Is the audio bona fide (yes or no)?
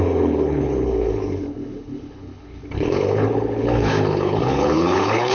no